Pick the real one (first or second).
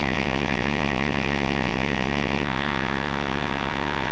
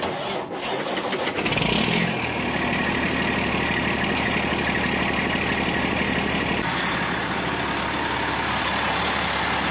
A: second